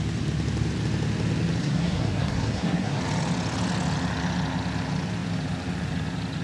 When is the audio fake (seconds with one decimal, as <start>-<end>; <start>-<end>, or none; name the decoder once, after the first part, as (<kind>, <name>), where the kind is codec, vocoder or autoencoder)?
1.6-3.0 (codec, SNAC)